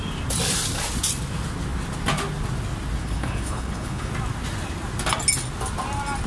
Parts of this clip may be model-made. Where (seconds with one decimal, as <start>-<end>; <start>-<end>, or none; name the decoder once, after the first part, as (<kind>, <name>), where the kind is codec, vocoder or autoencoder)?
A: 3.0-4.1 (codec, HILCodec)